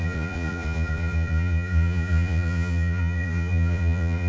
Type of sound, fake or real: fake